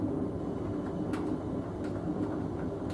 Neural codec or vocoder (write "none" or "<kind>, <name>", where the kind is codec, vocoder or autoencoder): none